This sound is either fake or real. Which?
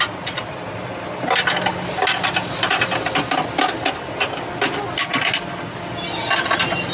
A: real